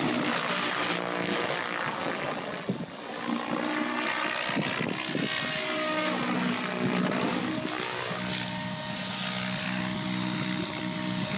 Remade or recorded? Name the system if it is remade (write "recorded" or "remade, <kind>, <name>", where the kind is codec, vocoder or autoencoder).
recorded